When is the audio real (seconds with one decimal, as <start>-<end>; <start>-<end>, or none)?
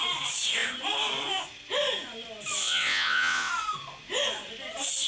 0.0-2.6; 3.5-5.1